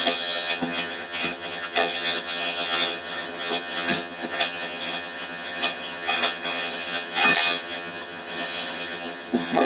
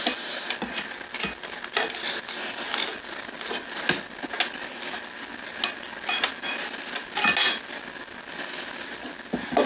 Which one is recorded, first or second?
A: second